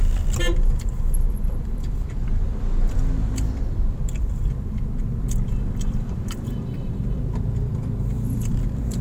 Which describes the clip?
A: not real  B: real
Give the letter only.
A